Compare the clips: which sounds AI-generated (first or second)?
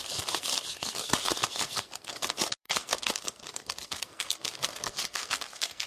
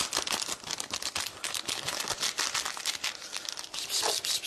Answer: first